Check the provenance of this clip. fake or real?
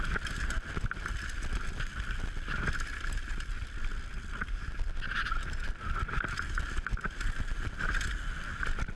real